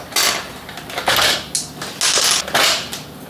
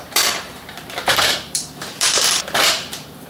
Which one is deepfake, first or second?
second